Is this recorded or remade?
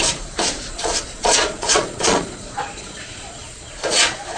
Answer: remade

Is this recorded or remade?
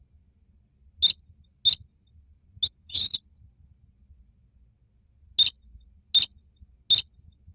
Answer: recorded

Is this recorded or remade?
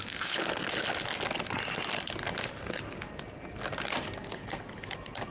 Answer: recorded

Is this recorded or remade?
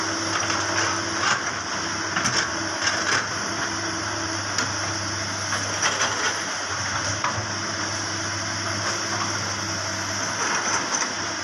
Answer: recorded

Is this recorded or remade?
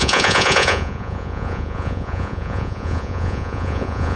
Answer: remade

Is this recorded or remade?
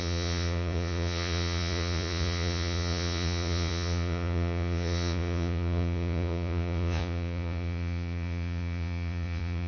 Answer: remade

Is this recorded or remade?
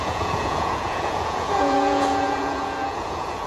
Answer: remade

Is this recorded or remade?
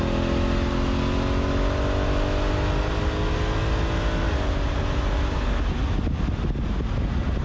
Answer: recorded